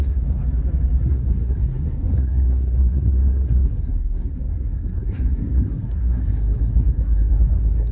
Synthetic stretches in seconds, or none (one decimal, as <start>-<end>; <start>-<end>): 0.0-0.4; 1.0-7.9